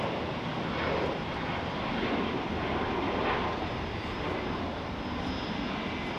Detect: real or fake real